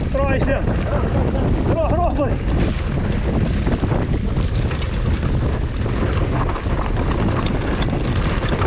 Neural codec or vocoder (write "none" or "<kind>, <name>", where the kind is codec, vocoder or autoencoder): none